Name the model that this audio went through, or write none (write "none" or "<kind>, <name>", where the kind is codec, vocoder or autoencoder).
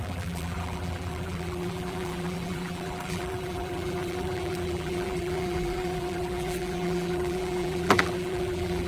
vocoder, BigVGAN v2